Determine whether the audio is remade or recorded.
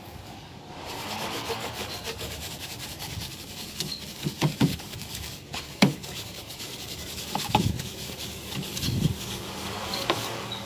remade